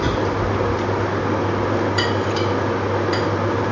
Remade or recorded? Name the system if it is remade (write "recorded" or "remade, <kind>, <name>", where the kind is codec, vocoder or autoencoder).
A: recorded